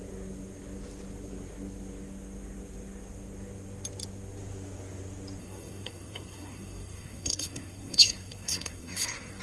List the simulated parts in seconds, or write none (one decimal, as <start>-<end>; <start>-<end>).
5.4-9.4